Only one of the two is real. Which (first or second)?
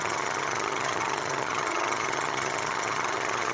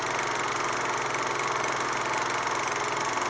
second